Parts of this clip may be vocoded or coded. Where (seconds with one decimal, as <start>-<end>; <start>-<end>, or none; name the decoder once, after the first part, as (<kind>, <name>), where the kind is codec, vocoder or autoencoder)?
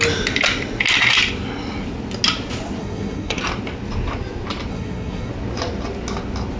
2.8-3.4 (codec, SNAC); 4.7-5.3